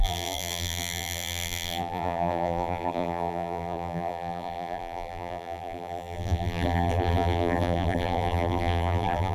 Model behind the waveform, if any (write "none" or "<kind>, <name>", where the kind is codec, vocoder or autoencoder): vocoder, BigVGAN v2